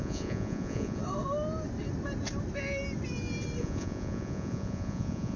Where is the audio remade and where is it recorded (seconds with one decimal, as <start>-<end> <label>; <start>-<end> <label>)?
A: 0.0-1.0 remade; 1.0-3.6 recorded; 3.6-5.4 remade